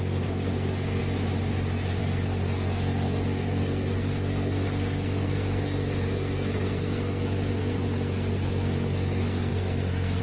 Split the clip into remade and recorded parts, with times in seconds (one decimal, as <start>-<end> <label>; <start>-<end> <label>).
0.0-1.0 remade; 1.0-2.0 recorded; 2.0-10.2 remade